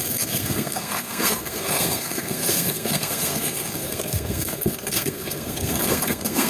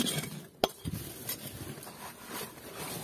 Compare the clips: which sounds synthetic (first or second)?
first